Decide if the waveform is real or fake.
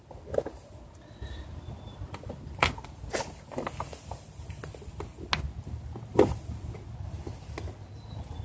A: real